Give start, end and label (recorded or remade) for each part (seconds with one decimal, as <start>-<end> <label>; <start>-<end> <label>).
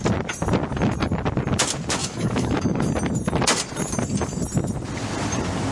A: 0.0-2.0 recorded; 2.0-2.9 remade; 2.9-5.7 recorded